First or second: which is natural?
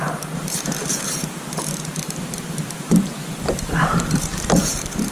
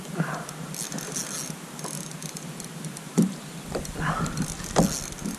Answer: second